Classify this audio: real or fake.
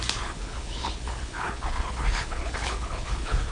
fake